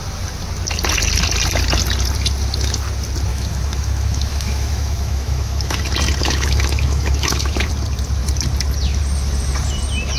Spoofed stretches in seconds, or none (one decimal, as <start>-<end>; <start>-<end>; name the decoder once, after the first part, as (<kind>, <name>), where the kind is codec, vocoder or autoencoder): 3.3-5.8 (autoencoder, DAC-VAE); 6.2-7.7